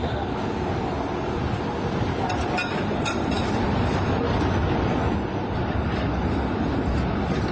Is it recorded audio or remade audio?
recorded